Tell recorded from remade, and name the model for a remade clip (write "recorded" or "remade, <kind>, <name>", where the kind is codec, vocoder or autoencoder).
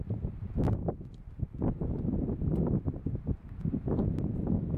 recorded